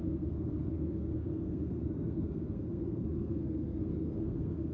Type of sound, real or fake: fake